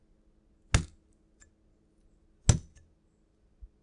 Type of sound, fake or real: real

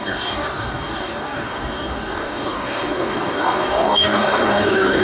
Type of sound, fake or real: fake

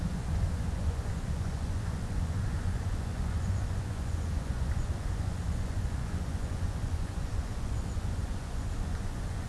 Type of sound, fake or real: fake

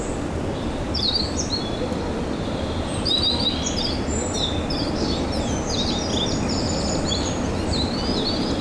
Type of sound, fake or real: real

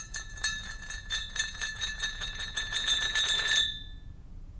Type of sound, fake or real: fake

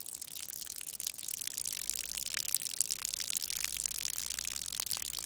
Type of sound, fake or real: real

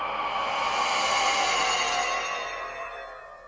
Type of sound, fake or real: fake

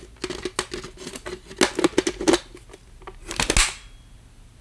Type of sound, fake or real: real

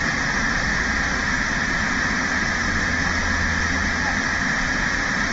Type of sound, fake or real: real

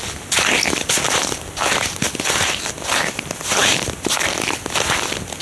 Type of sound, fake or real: real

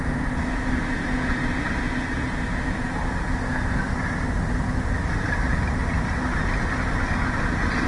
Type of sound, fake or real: real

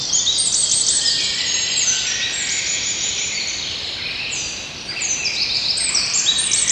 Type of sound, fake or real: fake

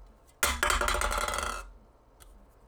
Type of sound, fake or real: real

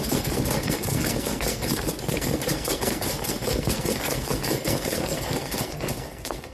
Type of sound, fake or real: fake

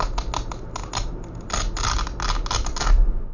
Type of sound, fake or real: real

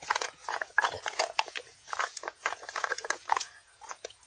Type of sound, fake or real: fake